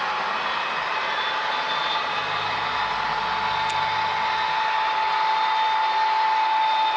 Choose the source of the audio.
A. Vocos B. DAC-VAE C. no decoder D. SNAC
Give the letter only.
C